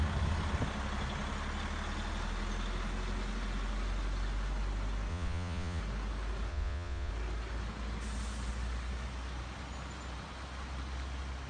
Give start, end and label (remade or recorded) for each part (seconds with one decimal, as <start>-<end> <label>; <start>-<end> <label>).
0.0-5.1 recorded; 5.1-5.8 remade; 5.8-6.5 recorded; 6.5-7.1 remade; 7.1-11.5 recorded